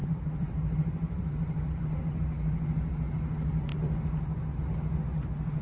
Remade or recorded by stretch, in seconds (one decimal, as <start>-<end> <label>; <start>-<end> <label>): 0.0-1.8 remade; 1.8-5.6 recorded